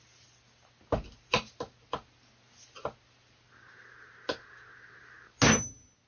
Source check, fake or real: real